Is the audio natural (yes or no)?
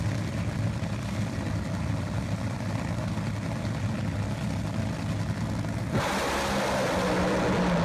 yes